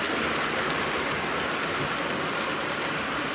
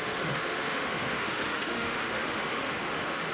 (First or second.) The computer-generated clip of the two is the second